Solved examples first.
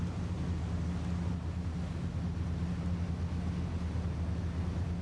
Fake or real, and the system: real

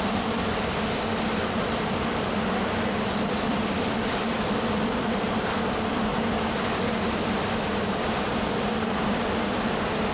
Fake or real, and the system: fake, vocoder, BigVGAN v2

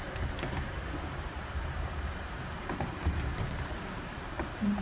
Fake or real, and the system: fake, vocoder, BigVGAN v2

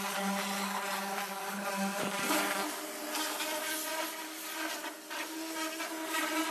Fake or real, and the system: real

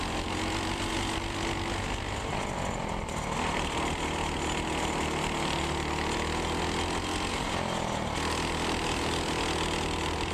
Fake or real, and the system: real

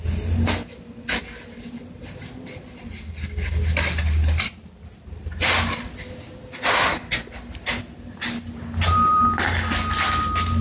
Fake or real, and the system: fake, vocoder, BigVGAN v2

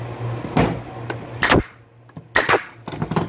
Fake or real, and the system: real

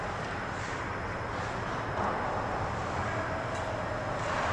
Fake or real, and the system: real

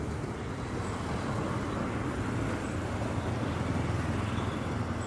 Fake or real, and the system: real